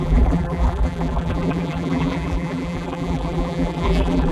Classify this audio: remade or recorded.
remade